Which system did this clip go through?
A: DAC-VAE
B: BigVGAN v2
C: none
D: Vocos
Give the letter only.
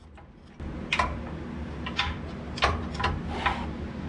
C